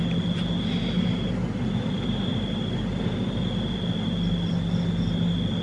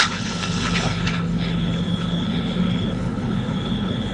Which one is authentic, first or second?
first